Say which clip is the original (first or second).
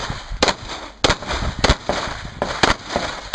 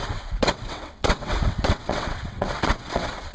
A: first